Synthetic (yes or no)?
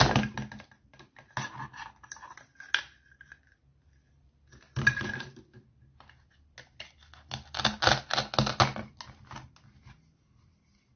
no